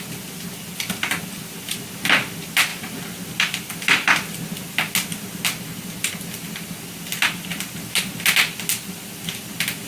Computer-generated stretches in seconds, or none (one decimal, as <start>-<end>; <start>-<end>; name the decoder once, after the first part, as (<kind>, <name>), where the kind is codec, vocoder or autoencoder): none

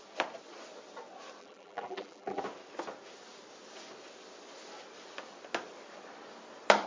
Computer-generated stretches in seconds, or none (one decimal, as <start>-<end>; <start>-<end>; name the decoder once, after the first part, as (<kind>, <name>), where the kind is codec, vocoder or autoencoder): 1.4-2.4 (vocoder, BigVGAN v2)

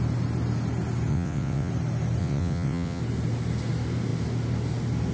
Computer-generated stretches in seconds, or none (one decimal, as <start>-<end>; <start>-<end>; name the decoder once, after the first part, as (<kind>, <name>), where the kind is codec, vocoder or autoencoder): 1.1-1.7 (vocoder, WaveNeXt); 2.2-3.0

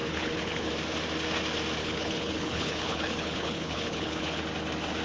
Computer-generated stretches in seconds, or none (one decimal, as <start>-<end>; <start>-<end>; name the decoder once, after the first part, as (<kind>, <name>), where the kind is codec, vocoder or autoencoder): 0.0-0.7 (codec, HILCodec); 1.8-4.4